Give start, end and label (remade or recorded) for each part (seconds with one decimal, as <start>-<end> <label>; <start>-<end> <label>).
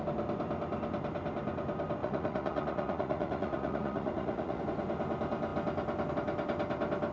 0.0-2.0 recorded; 2.0-4.6 remade; 4.6-7.1 recorded